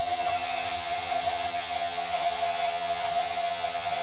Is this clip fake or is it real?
fake